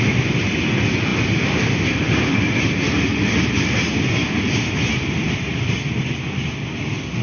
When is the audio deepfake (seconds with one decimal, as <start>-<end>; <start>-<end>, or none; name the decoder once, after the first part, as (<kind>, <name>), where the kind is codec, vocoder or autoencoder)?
none